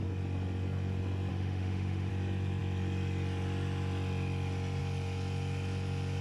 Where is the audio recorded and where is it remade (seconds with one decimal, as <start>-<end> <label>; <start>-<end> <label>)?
0.0-1.3 recorded; 1.3-2.1 remade; 2.1-6.2 recorded